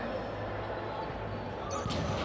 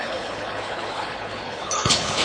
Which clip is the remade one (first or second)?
second